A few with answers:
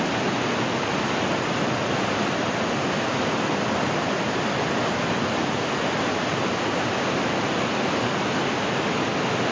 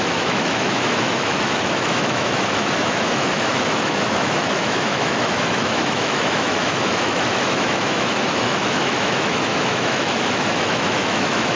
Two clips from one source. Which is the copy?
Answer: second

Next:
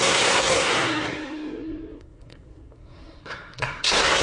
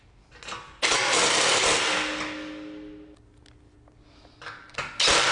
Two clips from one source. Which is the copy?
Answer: first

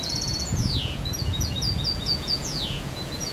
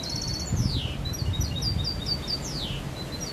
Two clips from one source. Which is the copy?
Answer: first